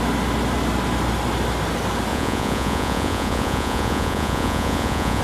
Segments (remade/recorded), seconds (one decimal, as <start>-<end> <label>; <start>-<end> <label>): 0.0-2.1 recorded; 2.1-5.2 remade